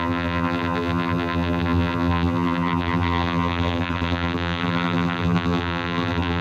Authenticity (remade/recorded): remade